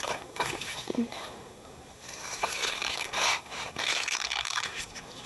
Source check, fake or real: fake